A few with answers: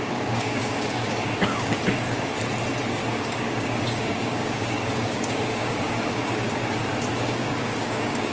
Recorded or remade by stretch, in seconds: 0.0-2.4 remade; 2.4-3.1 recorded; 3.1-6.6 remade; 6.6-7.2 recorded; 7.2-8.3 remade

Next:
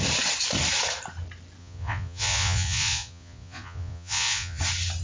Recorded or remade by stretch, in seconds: 0.0-1.6 recorded; 1.6-4.6 remade; 4.6-5.0 recorded

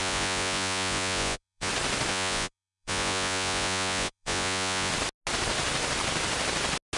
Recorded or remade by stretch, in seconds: 0.0-1.7 remade; 1.7-2.1 recorded; 2.1-4.9 remade; 4.9-7.0 recorded

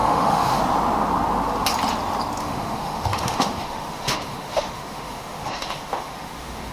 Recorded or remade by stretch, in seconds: 0.0-0.6 remade; 0.6-2.4 recorded; 2.4-6.7 remade

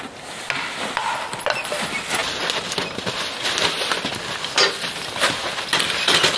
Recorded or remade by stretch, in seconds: 0.0-6.4 recorded

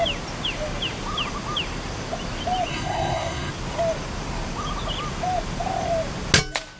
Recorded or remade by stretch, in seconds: 0.0-2.7 recorded; 2.7-3.5 remade; 3.5-6.8 recorded

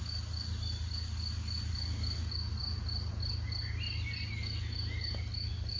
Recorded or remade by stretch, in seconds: 0.0-5.8 recorded